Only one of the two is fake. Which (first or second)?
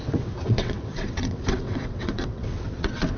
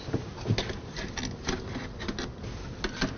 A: first